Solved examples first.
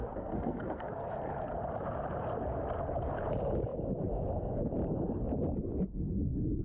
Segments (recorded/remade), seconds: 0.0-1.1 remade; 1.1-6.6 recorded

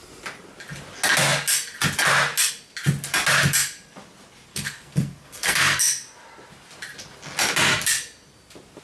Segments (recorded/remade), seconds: 0.0-4.5 recorded; 4.5-5.8 remade; 5.8-8.8 recorded

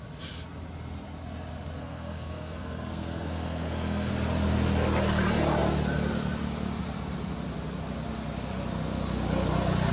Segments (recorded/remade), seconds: 0.0-1.8 recorded; 1.8-4.1 remade; 4.1-9.9 recorded